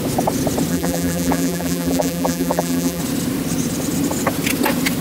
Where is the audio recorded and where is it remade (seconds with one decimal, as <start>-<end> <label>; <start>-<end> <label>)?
0.0-0.7 recorded; 0.7-3.0 remade; 3.0-5.0 recorded